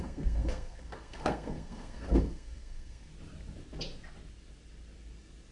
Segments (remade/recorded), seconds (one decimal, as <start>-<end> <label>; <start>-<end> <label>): 0.0-3.1 remade; 3.1-5.5 recorded